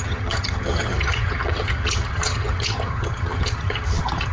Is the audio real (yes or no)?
no